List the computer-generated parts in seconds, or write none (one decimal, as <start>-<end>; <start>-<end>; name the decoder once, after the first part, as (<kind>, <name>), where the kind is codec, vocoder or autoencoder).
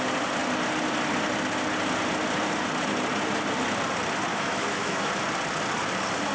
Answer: 4.3-5.1 (autoencoder, DAC-VAE)